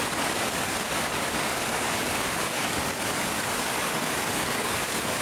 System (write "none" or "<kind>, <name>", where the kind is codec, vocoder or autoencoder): codec, DAC